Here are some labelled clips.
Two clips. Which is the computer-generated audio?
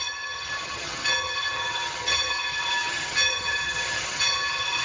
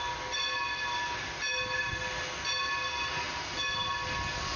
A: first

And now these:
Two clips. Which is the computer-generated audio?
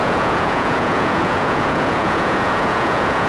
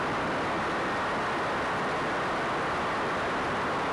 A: first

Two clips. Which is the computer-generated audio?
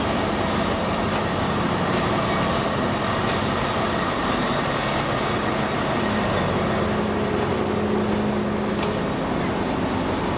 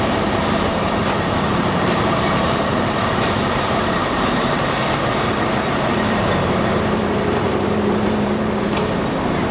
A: second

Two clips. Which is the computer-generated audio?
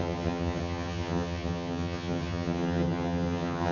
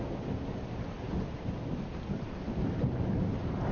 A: first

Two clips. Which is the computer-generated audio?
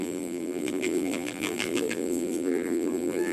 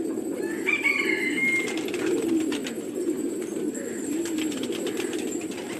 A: first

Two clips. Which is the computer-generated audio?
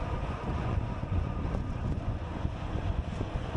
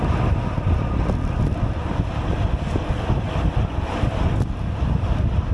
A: first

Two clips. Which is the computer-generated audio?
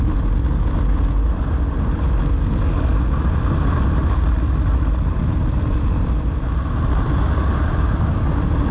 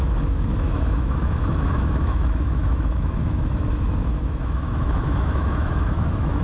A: second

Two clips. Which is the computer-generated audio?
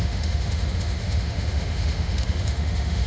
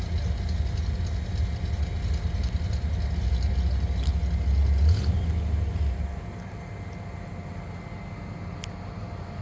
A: first